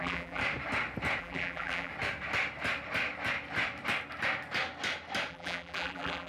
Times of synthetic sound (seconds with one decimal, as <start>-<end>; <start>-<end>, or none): 0.0-0.4; 1.2-1.9; 5.3-6.3